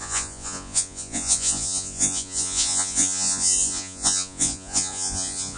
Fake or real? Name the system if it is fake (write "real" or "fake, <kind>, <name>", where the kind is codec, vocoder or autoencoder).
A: fake, vocoder, Vocos